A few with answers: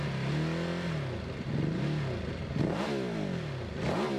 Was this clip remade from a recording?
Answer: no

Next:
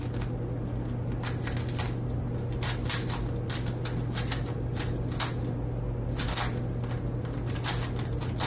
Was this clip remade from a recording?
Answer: no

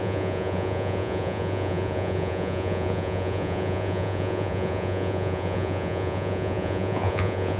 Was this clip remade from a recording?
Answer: yes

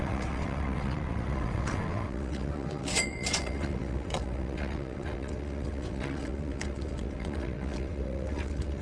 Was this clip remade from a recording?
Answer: yes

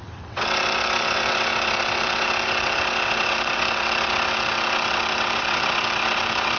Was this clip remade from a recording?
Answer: yes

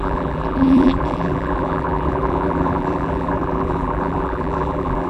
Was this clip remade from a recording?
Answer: yes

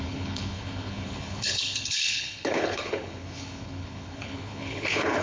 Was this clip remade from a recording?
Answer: yes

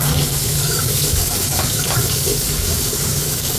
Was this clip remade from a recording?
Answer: yes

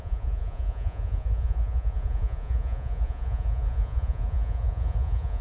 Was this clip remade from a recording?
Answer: yes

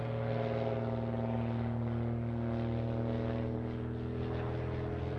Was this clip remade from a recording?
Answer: no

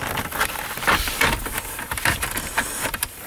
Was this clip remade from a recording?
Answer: yes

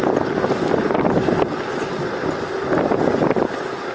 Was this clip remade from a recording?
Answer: no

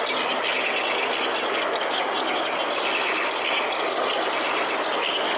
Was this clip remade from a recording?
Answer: no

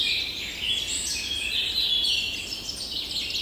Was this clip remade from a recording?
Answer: no